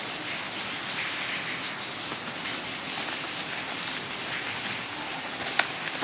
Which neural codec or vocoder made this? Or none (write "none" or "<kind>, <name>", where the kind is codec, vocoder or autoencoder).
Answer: none